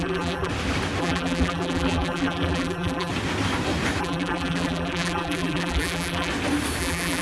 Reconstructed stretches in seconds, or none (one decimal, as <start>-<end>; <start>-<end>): 0.0-0.5; 1.0-3.1; 4.0-6.3; 6.8-7.2